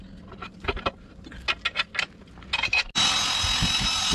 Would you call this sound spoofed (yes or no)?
no